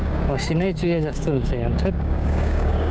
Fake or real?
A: fake